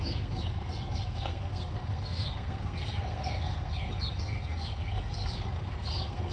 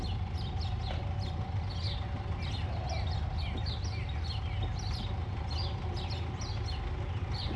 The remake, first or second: first